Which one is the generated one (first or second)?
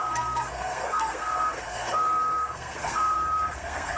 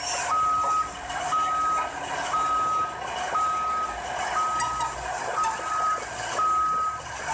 first